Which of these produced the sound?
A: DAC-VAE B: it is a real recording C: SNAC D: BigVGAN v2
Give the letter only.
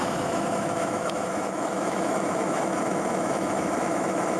A